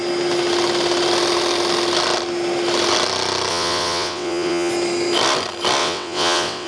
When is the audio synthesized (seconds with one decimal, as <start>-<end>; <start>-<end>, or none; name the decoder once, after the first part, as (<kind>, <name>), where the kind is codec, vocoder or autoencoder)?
3.5-4.7 (vocoder, WaveNeXt); 5.8-6.7